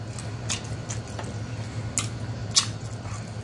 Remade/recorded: recorded